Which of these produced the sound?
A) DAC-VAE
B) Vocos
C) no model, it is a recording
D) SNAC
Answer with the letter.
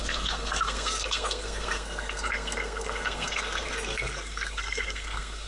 D